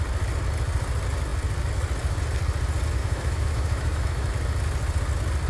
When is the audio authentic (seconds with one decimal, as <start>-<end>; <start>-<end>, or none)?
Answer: 0.0-3.0; 4.3-5.5